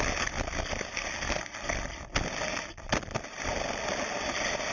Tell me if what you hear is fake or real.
real